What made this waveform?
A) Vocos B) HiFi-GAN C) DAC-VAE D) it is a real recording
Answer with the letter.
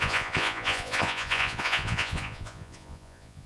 A